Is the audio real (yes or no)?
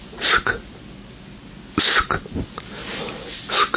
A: yes